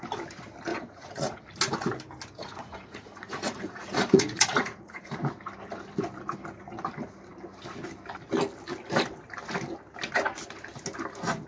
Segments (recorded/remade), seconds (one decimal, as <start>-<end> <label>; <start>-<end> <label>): 0.0-0.7 recorded; 0.7-1.4 remade; 1.4-2.4 recorded; 2.4-5.1 remade; 5.1-11.5 recorded